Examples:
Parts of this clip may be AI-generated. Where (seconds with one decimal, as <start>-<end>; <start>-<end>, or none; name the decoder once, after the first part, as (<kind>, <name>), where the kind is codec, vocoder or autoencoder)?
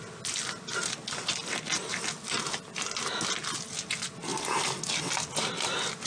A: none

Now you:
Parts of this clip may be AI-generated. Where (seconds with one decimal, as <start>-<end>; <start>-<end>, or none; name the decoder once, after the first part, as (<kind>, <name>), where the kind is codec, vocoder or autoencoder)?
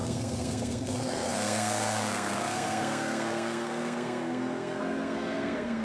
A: 0.0-5.8 (codec, SNAC)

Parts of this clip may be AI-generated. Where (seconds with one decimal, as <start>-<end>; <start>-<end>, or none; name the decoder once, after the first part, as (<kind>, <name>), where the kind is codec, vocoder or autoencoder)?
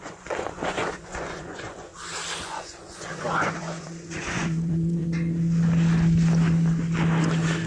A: 0.0-1.9 (vocoder, Vocos); 2.4-5.0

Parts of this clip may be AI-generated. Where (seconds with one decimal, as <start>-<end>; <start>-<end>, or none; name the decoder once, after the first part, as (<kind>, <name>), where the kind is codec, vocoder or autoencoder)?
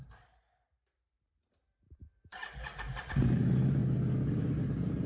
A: 0.0-3.8 (vocoder, BigVGAN v2); 4.3-5.1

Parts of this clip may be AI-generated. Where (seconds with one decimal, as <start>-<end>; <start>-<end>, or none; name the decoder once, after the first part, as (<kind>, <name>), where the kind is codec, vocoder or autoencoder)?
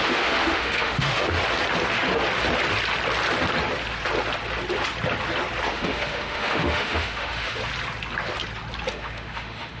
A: 0.0-1.2 (autoencoder, DAC-VAE); 5.7-7.6; 8.9-9.8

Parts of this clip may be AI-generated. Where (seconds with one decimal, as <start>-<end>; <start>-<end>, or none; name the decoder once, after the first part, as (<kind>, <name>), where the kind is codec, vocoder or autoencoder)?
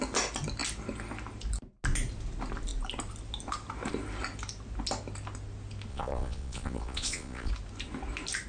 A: 5.9-7.5 (vocoder, Vocos)